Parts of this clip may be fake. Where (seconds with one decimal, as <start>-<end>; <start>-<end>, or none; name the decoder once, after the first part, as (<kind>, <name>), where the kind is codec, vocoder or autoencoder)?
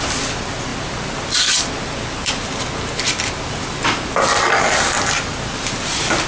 none